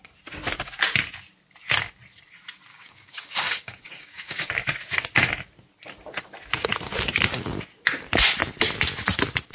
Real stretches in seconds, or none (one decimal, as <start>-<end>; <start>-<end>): 0.0-2.7; 4.5-9.5